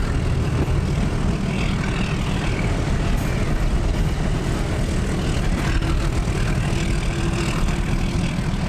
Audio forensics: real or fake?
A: real